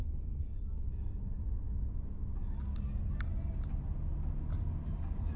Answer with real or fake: real